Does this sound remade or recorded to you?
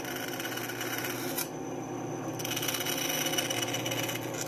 recorded